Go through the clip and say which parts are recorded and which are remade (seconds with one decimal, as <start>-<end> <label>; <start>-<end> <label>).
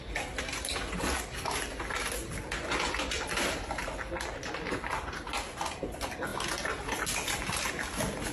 0.0-8.3 recorded